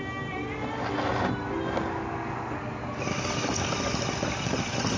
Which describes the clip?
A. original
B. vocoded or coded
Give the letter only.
A